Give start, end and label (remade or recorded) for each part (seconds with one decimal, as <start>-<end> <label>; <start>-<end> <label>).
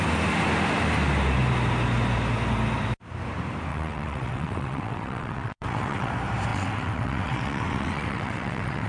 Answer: 0.0-3.7 recorded; 3.7-6.1 remade; 6.1-6.5 recorded; 6.5-8.9 remade